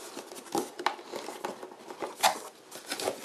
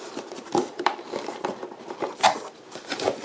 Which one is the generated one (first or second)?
second